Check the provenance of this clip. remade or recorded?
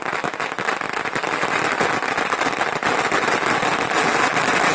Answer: recorded